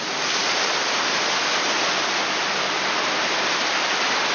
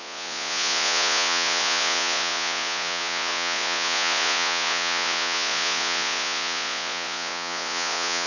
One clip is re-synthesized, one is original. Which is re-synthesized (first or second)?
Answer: second